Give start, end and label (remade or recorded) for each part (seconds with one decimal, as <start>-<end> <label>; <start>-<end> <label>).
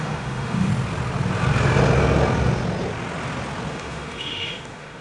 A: 0.0-0.7 remade; 0.7-3.7 recorded; 3.7-5.0 remade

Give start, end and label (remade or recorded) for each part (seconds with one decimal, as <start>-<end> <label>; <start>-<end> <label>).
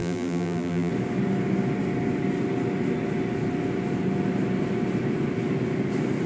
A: 0.0-0.9 remade; 0.9-6.3 recorded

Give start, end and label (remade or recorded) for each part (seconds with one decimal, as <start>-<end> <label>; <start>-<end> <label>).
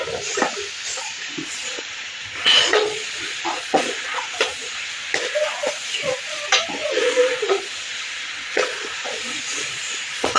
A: 0.0-1.0 recorded; 1.0-4.9 remade; 4.9-6.8 recorded; 6.8-10.4 remade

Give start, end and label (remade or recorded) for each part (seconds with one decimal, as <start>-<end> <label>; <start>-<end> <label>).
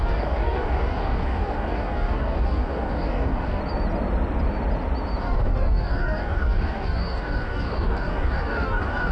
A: 0.0-3.6 remade; 3.6-5.2 recorded; 5.2-9.1 remade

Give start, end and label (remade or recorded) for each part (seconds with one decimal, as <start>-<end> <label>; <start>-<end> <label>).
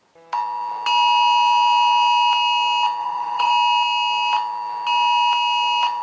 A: 0.0-3.0 recorded; 3.0-3.5 remade; 3.5-6.0 recorded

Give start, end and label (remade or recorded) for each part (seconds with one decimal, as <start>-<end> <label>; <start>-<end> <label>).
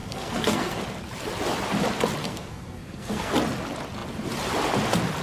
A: 0.0-0.8 remade; 0.8-2.2 recorded; 2.2-3.3 remade; 3.3-5.2 recorded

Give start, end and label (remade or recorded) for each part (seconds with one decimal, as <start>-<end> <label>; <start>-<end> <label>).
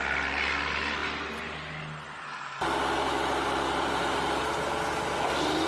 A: 0.0-5.7 recorded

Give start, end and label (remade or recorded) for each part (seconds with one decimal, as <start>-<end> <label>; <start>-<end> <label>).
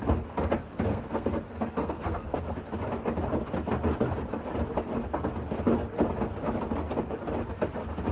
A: 0.0-0.9 recorded; 0.9-2.4 remade; 2.4-8.1 recorded